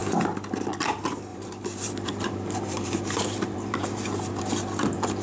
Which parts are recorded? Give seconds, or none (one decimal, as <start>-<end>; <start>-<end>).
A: 0.0-1.3; 4.4-5.2